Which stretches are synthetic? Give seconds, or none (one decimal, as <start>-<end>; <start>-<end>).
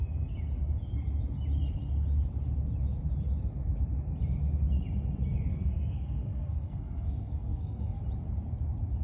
5.5-8.0